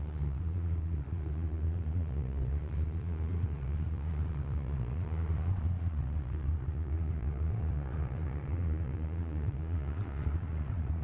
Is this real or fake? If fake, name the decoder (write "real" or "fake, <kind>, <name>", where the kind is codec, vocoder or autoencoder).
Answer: fake, vocoder, Vocos